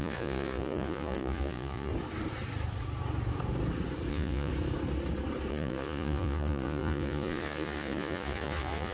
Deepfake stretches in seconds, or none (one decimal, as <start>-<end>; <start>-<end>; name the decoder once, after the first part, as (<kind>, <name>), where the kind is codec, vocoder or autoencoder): 0.0-1.9 (vocoder, Vocos); 4.1-4.5; 5.5-8.9